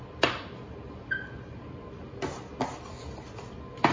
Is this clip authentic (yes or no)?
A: yes